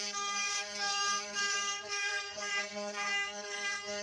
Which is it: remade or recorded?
remade